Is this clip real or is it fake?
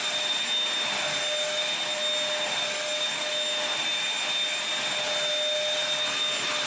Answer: real